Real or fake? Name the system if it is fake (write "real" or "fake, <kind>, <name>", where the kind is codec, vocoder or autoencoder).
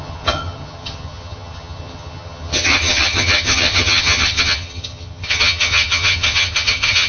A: fake, vocoder, HiFi-GAN